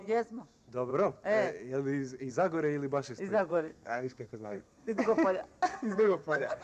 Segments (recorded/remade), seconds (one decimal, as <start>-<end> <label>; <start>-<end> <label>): 0.0-3.5 recorded; 3.5-5.0 remade; 5.0-5.7 recorded; 5.7-6.6 remade

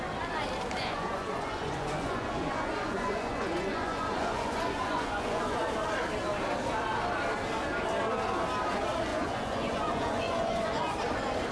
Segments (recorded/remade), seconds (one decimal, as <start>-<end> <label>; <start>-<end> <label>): 0.0-0.8 recorded; 0.8-5.6 remade; 5.6-9.1 recorded; 9.1-10.8 remade; 10.8-11.5 recorded

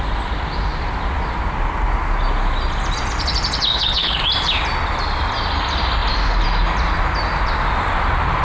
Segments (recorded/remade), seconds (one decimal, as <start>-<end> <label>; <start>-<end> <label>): 0.0-3.7 recorded; 3.7-4.2 remade; 4.2-8.4 recorded

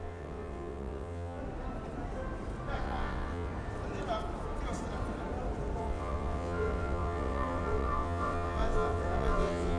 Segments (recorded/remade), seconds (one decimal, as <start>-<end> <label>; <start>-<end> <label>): 0.0-1.4 remade; 1.4-2.8 recorded; 2.8-3.5 remade; 3.5-5.8 recorded; 5.8-9.8 remade

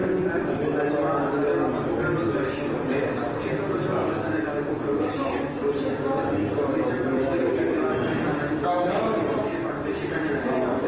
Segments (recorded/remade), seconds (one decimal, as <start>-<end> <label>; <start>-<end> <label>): 0.0-4.5 recorded; 4.5-7.4 remade; 7.4-10.9 recorded

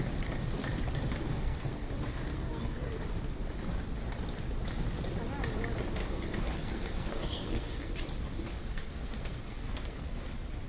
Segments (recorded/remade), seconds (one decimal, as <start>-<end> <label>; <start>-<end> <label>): 0.0-1.3 recorded; 1.3-1.9 remade; 1.9-2.3 recorded; 2.3-3.0 remade; 3.0-6.0 recorded; 6.0-7.9 remade; 7.9-8.6 recorded; 8.6-10.2 remade; 10.2-10.7 recorded

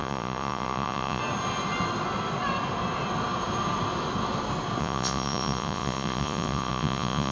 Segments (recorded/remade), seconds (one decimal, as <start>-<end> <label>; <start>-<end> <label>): 0.0-1.2 remade; 1.2-4.8 recorded; 4.8-7.3 remade